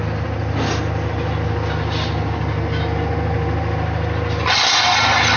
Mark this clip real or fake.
real